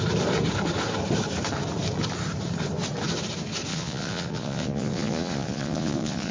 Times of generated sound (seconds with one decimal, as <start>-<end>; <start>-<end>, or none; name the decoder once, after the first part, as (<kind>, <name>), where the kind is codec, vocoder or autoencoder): 3.7-6.3 (vocoder, Vocos)